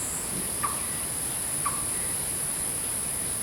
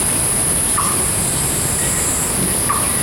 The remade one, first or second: first